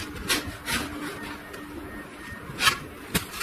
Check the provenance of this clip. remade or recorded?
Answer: recorded